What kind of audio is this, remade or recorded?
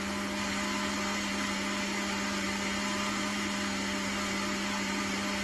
recorded